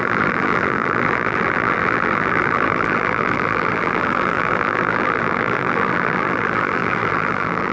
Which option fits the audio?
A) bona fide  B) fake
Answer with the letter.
B